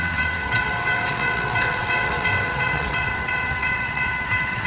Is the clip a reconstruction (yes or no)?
yes